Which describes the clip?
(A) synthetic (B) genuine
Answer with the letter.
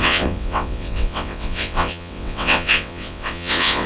A